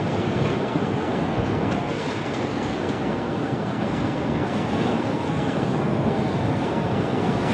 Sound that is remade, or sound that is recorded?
remade